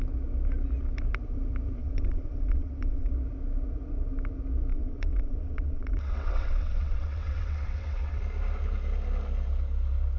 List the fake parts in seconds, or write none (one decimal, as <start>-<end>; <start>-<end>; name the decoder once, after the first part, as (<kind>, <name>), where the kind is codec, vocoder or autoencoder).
1.8-3.1 (vocoder, WaveNeXt); 4.7-8.2